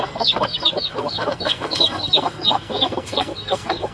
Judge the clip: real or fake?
fake